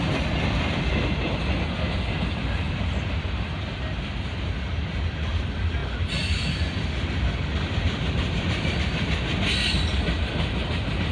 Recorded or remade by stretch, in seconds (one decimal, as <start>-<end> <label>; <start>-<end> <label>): 0.0-11.1 recorded